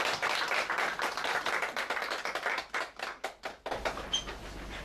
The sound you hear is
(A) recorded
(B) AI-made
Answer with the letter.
A